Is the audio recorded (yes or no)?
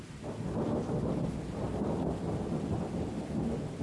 yes